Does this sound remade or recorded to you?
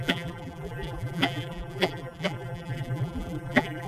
remade